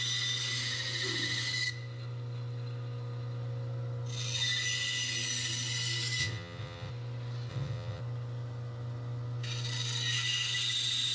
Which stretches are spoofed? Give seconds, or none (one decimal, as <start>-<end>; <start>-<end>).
6.2-6.9; 7.5-8.0